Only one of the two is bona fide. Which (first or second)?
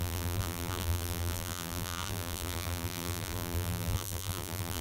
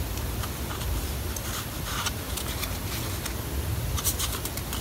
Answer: second